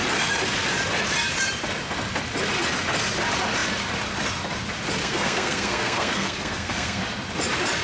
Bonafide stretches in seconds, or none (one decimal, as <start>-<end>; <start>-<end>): 0.0-5.0; 7.0-7.8